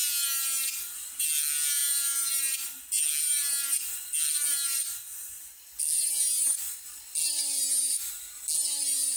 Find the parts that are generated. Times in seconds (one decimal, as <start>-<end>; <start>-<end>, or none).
none